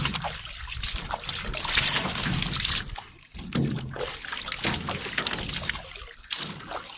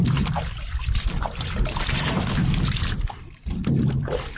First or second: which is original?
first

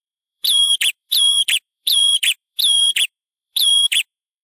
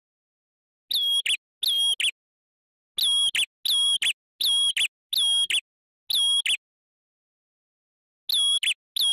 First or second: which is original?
second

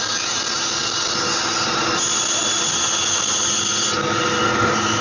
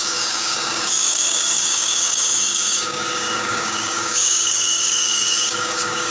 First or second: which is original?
first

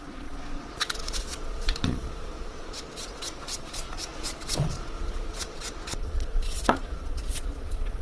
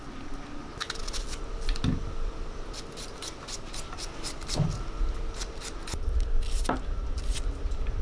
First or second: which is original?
second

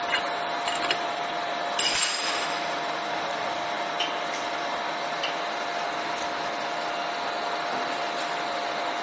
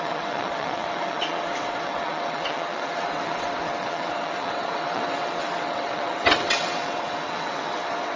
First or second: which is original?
first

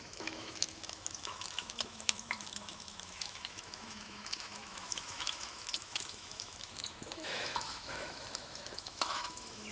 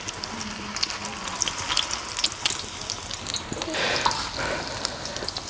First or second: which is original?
second